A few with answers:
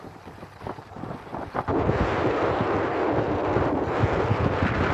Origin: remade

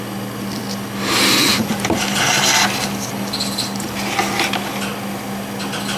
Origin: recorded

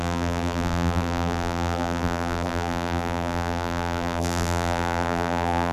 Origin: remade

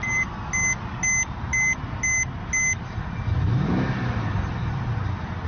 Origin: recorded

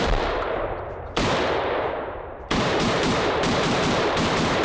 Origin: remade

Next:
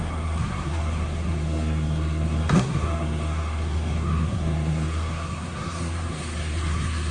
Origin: remade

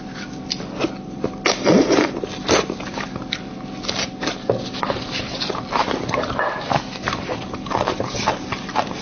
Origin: recorded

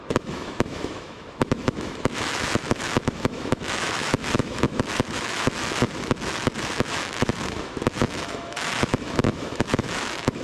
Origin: remade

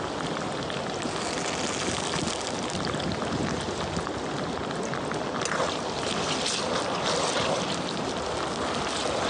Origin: recorded